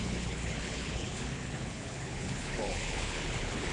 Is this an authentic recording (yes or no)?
no